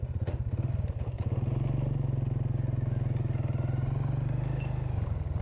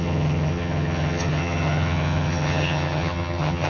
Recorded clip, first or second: first